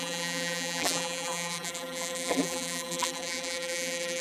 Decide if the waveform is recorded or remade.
remade